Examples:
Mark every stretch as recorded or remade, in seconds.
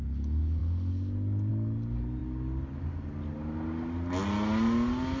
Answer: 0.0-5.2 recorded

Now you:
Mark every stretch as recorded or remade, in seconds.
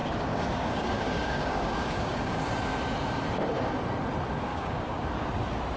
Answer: 0.0-2.4 remade; 2.4-4.5 recorded; 4.5-5.1 remade; 5.1-5.8 recorded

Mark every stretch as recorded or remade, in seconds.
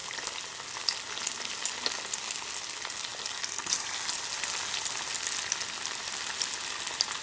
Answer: 0.0-7.2 recorded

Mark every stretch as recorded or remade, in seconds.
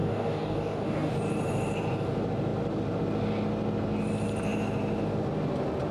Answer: 0.0-1.1 remade; 1.1-5.9 recorded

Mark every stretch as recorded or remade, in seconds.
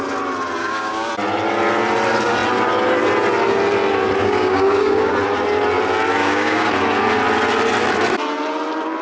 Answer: 0.0-0.6 recorded; 0.6-1.1 remade; 1.1-4.2 recorded; 4.2-5.1 remade; 5.1-6.2 recorded; 6.2-6.7 remade; 6.7-9.0 recorded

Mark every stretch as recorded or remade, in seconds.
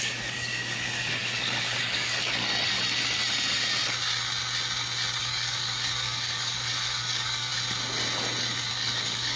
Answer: 0.0-2.5 remade; 2.5-5.2 recorded; 5.2-7.5 remade; 7.5-8.7 recorded; 8.7-9.4 remade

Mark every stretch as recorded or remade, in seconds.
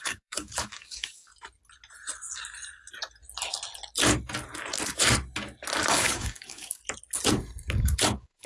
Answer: 0.0-1.3 remade; 1.3-5.9 recorded; 5.9-6.8 remade; 6.8-7.8 recorded; 7.8-8.5 remade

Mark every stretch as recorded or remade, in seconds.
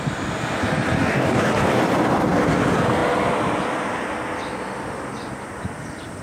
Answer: 0.0-1.0 recorded; 1.0-1.5 remade; 1.5-6.2 recorded